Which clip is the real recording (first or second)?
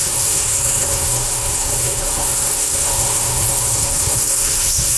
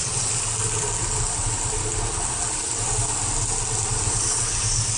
second